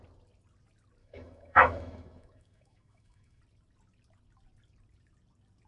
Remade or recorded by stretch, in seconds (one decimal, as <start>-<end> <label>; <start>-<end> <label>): 0.0-1.0 recorded; 1.0-3.4 remade; 3.4-5.7 recorded

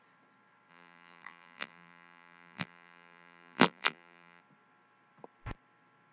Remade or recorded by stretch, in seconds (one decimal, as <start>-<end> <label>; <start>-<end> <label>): 0.0-0.7 recorded; 0.7-4.4 remade; 4.4-6.1 recorded

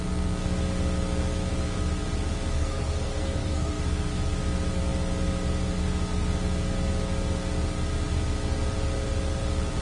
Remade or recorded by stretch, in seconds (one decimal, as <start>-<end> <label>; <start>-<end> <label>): 0.0-2.5 recorded; 2.5-3.8 remade; 3.8-9.8 recorded

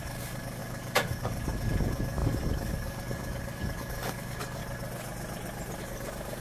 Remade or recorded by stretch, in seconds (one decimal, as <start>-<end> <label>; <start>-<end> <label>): 0.0-4.6 remade; 4.6-5.8 recorded; 5.8-6.4 remade

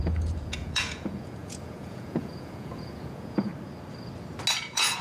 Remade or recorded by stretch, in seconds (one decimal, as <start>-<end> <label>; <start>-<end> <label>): 0.0-3.5 remade; 3.5-4.6 recorded; 4.6-5.0 remade

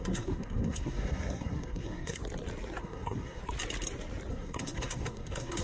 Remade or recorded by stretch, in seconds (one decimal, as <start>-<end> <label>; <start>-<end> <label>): 0.0-2.2 remade; 2.2-2.8 recorded; 2.8-3.4 remade; 3.4-4.3 recorded; 4.3-5.6 remade

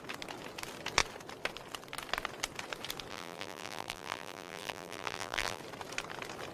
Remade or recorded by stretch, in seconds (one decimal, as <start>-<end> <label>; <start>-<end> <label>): 0.0-3.1 recorded; 3.1-5.6 remade; 5.6-6.5 recorded

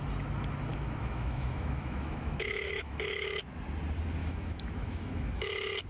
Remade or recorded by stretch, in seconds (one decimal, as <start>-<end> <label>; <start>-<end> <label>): 0.0-0.7 recorded; 0.7-3.4 remade; 3.4-4.2 recorded; 4.2-5.5 remade; 5.5-5.9 recorded